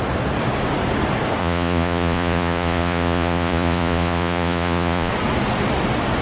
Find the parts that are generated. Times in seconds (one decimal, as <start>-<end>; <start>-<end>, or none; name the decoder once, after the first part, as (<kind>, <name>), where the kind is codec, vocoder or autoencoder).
1.4-5.1 (vocoder, Vocos)